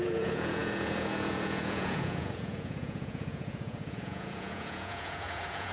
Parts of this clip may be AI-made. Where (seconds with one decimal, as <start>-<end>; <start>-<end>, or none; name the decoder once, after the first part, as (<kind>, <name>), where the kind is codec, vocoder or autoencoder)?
0.0-5.7 (vocoder, Vocos)